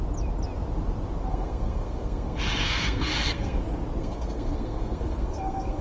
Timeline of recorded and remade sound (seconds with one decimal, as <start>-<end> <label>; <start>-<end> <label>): 0.0-1.3 recorded; 1.3-3.6 remade; 3.6-4.0 recorded; 4.0-5.8 remade